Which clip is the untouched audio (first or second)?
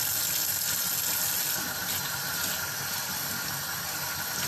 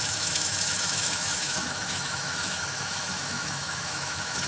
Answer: first